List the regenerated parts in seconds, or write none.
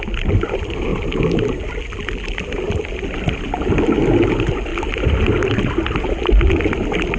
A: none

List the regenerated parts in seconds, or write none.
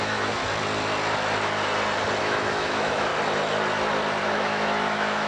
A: 0.0-0.4 (autoencoder, DAC-VAE); 2.2-3.1; 4.2-5.3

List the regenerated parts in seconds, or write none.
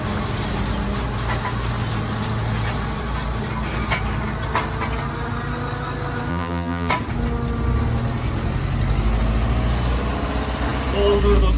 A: 6.3-6.9 (vocoder, BigVGAN v2)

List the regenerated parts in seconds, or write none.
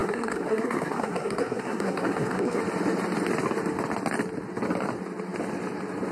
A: 0.0-2.6 (codec, SNAC)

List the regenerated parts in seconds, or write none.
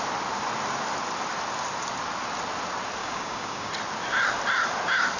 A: 3.0-3.7 (codec, DAC)